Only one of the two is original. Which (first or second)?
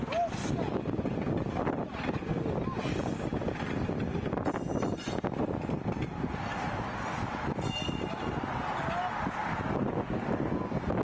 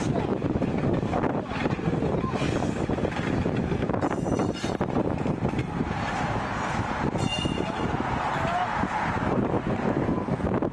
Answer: first